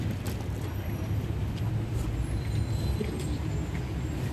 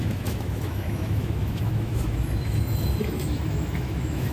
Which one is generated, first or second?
second